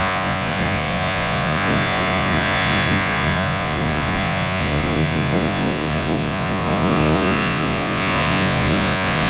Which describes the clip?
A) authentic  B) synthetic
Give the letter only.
B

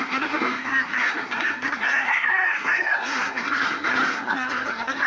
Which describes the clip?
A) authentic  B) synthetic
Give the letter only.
B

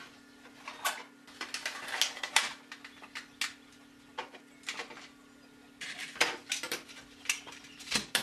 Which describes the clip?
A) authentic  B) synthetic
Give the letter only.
A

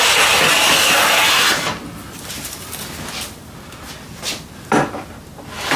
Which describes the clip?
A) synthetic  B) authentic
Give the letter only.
B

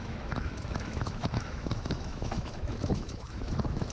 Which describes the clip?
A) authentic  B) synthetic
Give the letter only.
B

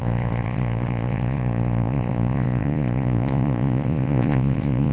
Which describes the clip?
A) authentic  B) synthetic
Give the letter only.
B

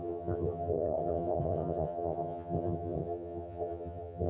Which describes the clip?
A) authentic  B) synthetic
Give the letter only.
B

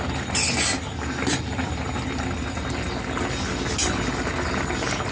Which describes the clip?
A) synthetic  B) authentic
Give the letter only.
B